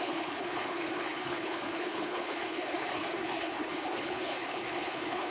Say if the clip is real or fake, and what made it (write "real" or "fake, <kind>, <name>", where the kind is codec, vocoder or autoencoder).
fake, codec, HILCodec